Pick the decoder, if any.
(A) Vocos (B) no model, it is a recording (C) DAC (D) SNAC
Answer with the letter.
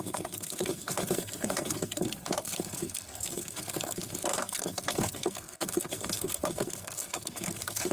D